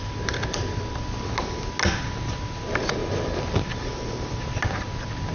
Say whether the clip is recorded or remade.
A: recorded